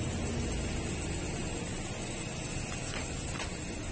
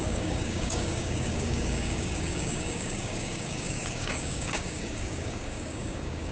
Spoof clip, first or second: second